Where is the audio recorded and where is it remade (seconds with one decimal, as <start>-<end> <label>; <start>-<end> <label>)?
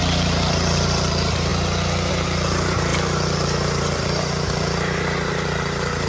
0.0-1.5 remade; 1.5-2.1 recorded; 2.1-6.1 remade